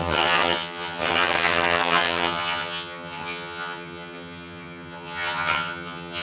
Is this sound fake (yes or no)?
yes